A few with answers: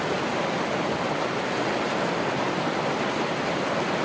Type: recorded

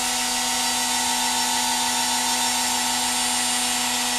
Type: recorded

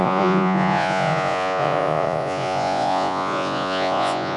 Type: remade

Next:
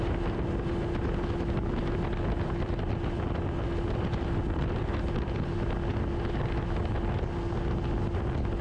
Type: recorded